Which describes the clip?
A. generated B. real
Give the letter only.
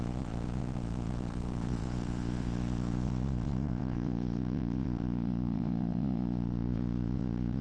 A